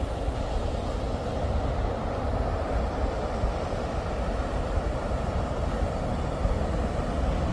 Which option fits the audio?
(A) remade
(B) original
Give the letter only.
B